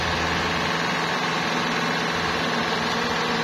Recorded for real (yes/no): yes